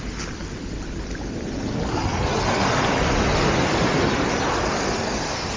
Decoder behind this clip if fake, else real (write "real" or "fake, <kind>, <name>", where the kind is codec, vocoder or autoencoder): real